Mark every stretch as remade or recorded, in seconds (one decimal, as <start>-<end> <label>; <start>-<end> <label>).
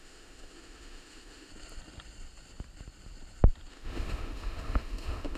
0.0-1.5 remade; 1.5-3.7 recorded; 3.7-5.4 remade